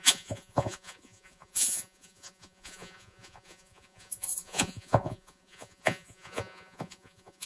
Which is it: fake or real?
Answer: fake